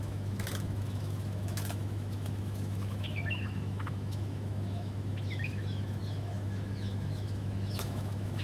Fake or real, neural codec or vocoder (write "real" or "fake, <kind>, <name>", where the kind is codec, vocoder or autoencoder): fake, autoencoder, DAC-VAE